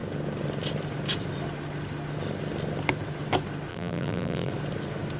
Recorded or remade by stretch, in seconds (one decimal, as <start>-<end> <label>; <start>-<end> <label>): 0.0-3.7 recorded; 3.7-4.5 remade; 4.5-5.2 recorded

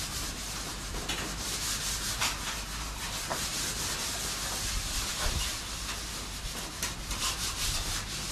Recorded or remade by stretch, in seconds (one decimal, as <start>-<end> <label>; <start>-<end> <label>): 0.0-3.5 remade; 3.5-5.1 recorded; 5.1-8.3 remade